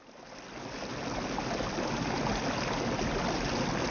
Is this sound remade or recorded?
recorded